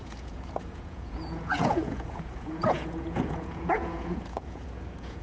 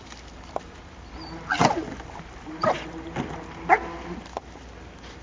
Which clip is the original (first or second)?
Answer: second